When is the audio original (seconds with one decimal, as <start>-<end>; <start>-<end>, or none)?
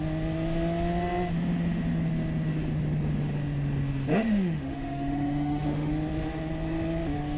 0.0-4.1; 5.9-7.4